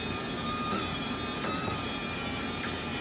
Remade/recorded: recorded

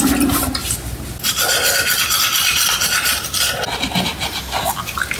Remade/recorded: recorded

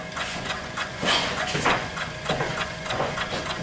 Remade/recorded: remade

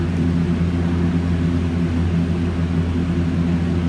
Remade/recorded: recorded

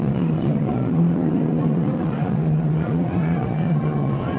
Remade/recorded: remade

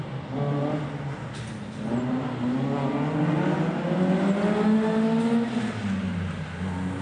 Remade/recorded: recorded